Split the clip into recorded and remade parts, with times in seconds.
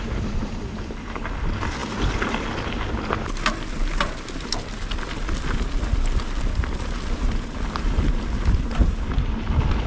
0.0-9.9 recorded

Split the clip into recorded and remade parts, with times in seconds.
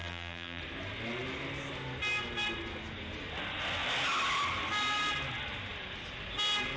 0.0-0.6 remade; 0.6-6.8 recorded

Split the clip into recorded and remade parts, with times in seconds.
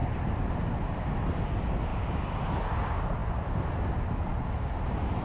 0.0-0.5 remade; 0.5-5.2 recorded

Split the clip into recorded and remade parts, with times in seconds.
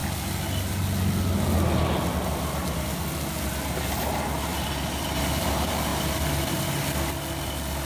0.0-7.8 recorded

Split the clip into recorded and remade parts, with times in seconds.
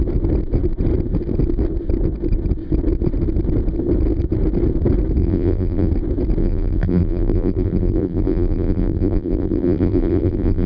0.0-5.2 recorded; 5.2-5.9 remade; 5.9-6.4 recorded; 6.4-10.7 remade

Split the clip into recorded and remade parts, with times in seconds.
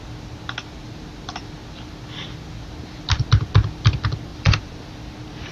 0.0-4.3 recorded; 4.3-4.9 remade; 4.9-5.5 recorded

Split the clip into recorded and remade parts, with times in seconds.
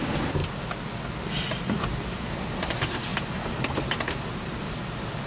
0.0-0.4 remade; 0.4-1.6 recorded; 1.6-3.1 remade; 3.1-5.3 recorded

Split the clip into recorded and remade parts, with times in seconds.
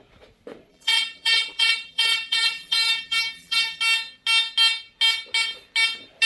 0.0-0.7 recorded; 0.7-3.8 remade; 3.8-6.2 recorded